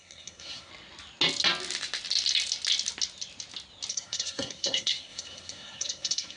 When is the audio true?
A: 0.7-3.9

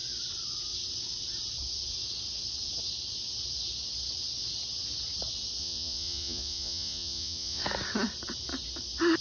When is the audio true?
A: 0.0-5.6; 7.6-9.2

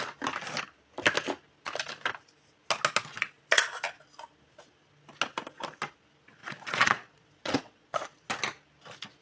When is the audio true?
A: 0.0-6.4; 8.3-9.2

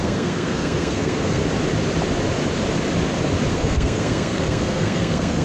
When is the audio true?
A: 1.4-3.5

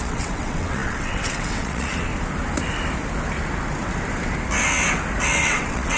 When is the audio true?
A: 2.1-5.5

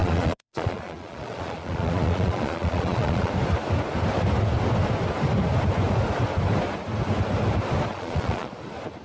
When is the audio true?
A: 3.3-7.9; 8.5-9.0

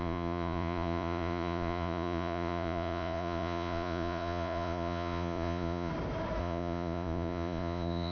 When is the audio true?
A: 5.9-6.4